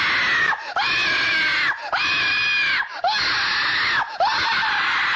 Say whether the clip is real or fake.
real